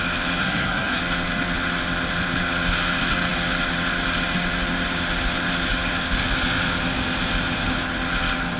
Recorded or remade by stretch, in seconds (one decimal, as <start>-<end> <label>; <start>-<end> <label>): 0.0-0.4 recorded; 0.4-1.0 remade; 1.0-8.6 recorded